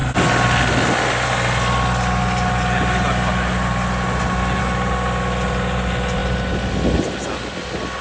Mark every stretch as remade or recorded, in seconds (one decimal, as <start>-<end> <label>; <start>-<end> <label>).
0.0-8.0 recorded